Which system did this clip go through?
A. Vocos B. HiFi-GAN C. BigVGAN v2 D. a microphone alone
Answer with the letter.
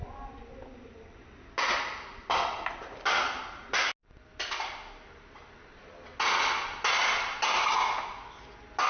D